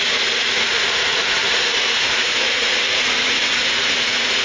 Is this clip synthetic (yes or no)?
yes